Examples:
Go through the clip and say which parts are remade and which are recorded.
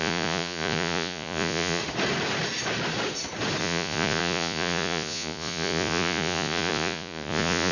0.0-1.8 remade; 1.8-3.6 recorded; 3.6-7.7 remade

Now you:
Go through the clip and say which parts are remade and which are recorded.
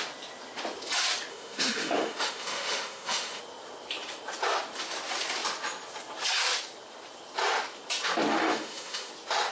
0.0-1.3 recorded; 1.3-3.4 remade; 3.4-8.3 recorded; 8.3-9.1 remade; 9.1-9.5 recorded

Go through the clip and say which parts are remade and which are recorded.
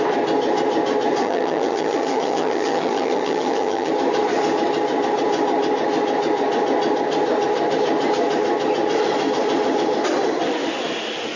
0.0-1.2 recorded; 1.2-3.9 remade; 3.9-11.4 recorded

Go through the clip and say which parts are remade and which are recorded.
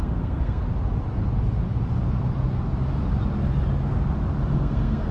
0.0-0.6 remade; 0.6-4.5 recorded; 4.5-5.1 remade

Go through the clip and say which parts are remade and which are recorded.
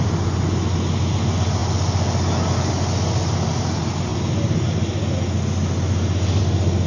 0.0-6.9 recorded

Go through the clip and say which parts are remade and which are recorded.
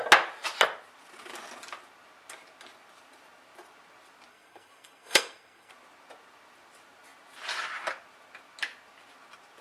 0.0-4.3 recorded; 4.3-5.7 remade; 5.7-9.6 recorded